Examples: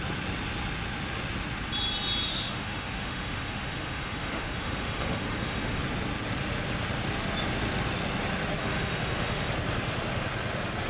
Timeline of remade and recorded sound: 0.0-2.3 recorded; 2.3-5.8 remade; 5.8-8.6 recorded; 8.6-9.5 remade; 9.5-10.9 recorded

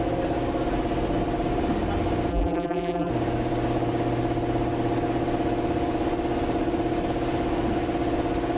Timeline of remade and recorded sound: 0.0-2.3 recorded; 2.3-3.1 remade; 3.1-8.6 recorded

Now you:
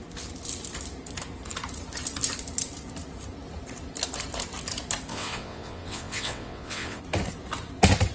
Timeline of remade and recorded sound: 0.0-5.1 recorded; 5.1-7.0 remade; 7.0-8.1 recorded

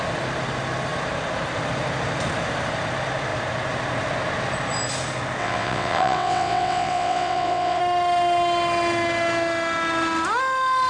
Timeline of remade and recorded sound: 0.0-5.4 recorded; 5.4-7.8 remade; 7.8-10.9 recorded